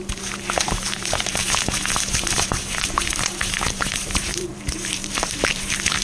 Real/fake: fake